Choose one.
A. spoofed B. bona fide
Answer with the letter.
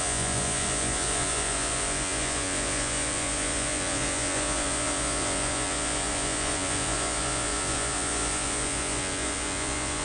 A